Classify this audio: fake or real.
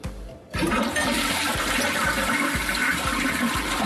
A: fake